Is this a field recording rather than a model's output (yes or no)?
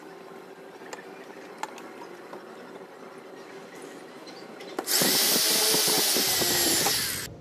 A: yes